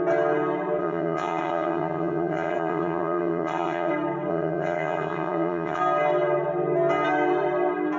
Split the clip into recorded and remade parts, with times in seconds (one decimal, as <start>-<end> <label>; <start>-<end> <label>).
0.0-0.8 recorded; 0.8-3.9 remade; 3.9-4.3 recorded; 4.3-5.8 remade; 5.8-8.0 recorded